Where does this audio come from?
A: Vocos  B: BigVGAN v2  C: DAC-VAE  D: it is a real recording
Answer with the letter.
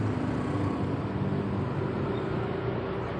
D